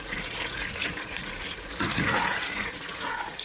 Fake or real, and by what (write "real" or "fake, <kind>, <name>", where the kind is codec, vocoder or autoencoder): fake, vocoder, Vocos